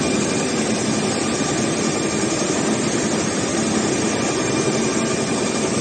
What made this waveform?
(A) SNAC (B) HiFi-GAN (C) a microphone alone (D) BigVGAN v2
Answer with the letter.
C